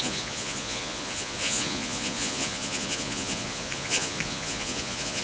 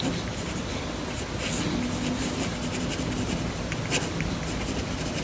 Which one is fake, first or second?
first